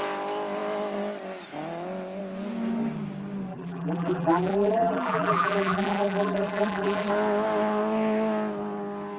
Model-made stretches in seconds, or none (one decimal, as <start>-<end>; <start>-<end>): 3.5-7.1